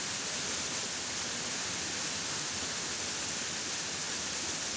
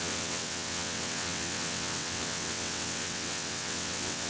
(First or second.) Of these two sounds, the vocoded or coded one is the second